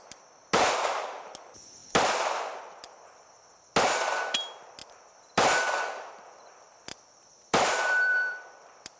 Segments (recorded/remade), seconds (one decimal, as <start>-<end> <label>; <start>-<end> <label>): 0.0-4.8 recorded; 4.8-6.1 remade; 6.1-6.9 recorded; 6.9-9.0 remade